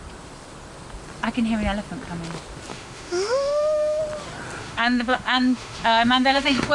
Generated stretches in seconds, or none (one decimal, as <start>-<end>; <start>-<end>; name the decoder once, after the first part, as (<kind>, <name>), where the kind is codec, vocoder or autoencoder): 2.7-4.0 (autoencoder, DAC-VAE); 4.6-6.7

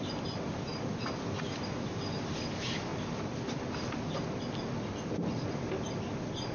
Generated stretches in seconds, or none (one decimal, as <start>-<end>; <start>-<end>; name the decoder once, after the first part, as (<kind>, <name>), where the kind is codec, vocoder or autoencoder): none

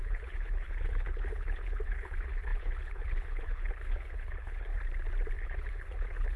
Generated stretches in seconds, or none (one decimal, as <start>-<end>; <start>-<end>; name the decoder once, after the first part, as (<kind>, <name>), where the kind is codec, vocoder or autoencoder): 0.0-4.7 (codec, HILCodec); 5.3-6.4